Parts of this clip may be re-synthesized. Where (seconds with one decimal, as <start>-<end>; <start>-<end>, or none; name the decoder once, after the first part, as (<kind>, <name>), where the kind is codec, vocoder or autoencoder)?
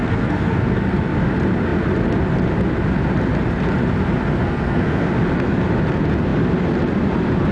0.0-0.7 (codec, SNAC); 4.3-5.1